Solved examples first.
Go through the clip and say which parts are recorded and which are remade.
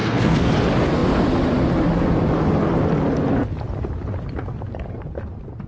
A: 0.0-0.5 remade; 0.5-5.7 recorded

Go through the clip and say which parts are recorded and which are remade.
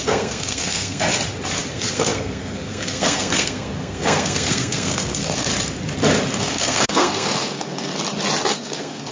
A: 0.0-1.1 remade; 1.1-1.7 recorded; 1.7-5.5 remade; 5.5-6.4 recorded; 6.4-7.9 remade; 7.9-8.5 recorded; 8.5-9.1 remade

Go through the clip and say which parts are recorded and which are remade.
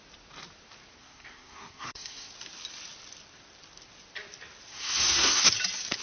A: 0.0-1.0 recorded; 1.0-2.3 remade; 2.3-4.7 recorded; 4.7-5.5 remade; 5.5-6.0 recorded